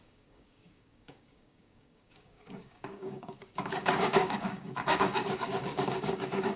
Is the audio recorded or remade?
remade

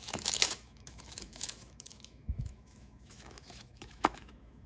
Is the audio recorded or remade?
remade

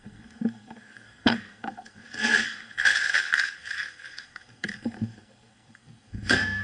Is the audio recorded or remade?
remade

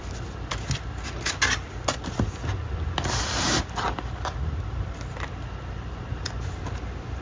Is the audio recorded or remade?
recorded